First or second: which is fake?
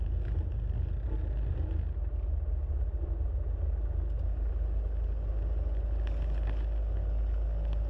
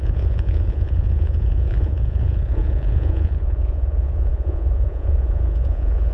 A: second